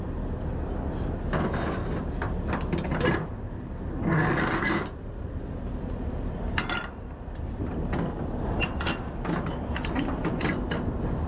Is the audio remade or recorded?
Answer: recorded